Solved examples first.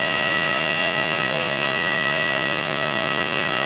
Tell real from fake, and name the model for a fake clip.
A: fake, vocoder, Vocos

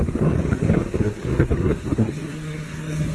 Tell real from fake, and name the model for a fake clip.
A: fake, codec, SNAC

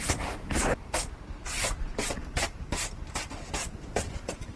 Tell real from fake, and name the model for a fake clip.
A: real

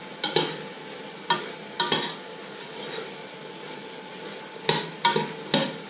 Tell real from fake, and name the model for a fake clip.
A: real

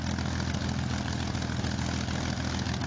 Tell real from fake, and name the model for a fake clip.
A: real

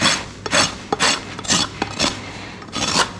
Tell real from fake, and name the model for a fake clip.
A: real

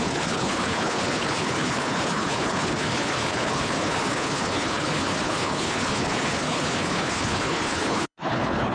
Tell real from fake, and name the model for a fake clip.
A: fake, codec, HILCodec